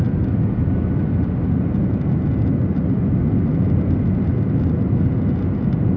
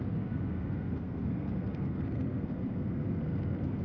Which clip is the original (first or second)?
first